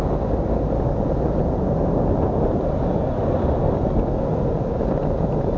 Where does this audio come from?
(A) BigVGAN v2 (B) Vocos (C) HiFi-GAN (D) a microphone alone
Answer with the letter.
D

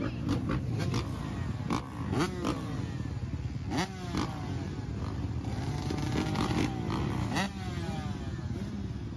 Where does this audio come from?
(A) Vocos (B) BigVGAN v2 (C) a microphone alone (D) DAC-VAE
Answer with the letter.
C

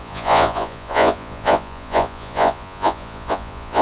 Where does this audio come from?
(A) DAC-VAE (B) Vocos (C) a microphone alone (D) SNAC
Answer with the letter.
B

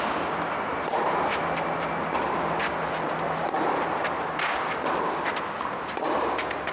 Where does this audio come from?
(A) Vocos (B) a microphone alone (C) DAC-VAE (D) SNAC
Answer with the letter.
B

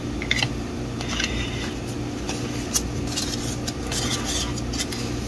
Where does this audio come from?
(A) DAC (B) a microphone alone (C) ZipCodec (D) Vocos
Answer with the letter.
B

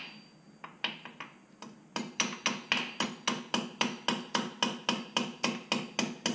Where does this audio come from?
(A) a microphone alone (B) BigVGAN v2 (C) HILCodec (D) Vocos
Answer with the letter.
A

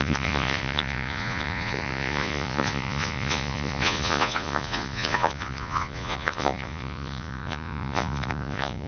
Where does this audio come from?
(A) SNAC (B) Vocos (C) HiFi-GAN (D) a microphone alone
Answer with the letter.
B